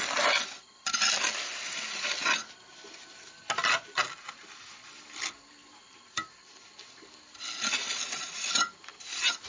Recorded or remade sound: recorded